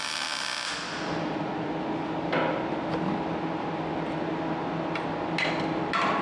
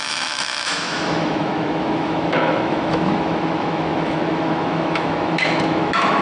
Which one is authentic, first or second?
first